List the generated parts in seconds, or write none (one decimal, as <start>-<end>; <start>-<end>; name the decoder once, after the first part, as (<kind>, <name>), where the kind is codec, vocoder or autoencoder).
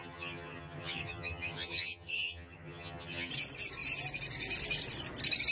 0.0-3.3 (vocoder, HiFi-GAN)